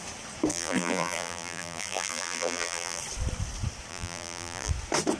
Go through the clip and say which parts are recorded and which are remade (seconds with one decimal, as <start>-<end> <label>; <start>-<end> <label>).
0.0-0.5 recorded; 0.5-3.0 remade; 3.0-3.9 recorded; 3.9-4.7 remade; 4.7-5.2 recorded